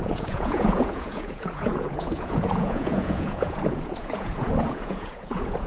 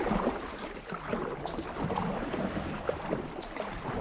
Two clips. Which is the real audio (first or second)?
second